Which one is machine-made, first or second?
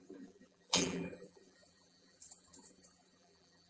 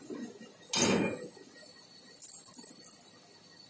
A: first